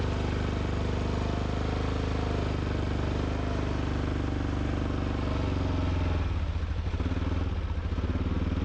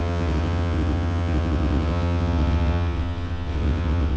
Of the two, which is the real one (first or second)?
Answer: first